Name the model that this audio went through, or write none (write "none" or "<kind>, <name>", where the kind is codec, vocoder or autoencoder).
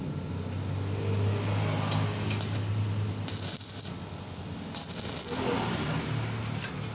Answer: none